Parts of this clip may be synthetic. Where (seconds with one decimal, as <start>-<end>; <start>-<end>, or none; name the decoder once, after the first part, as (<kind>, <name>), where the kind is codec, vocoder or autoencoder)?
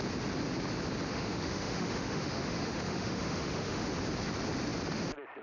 1.1-3.9 (autoencoder, DAC-VAE)